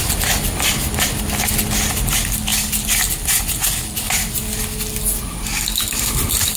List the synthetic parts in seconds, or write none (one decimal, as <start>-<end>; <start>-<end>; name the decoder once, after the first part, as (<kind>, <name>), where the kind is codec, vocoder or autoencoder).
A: none